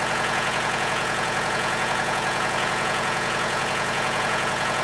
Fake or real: fake